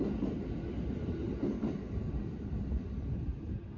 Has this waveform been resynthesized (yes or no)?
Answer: yes